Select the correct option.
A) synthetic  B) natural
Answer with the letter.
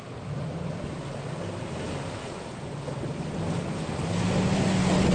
B